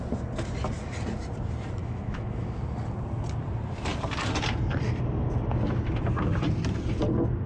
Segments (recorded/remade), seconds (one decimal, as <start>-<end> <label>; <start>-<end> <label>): 0.0-1.8 recorded; 1.8-2.6 remade; 2.6-7.5 recorded